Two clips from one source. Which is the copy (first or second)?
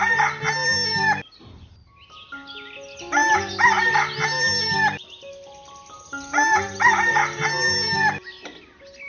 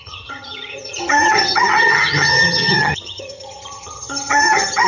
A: second